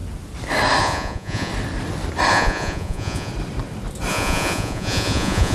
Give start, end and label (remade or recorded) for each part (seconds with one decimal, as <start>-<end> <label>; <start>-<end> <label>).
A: 0.0-0.8 recorded; 0.8-1.5 remade; 1.5-2.3 recorded; 2.3-3.3 remade; 3.3-4.1 recorded; 4.1-5.5 remade